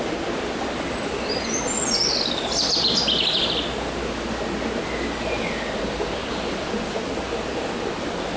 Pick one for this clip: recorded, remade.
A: recorded